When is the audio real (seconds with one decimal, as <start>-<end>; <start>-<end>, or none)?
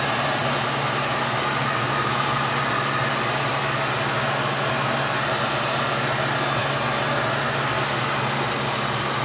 0.0-9.2